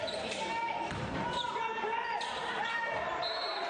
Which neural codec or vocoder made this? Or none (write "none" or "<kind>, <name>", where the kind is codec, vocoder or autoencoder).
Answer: vocoder, BigVGAN v2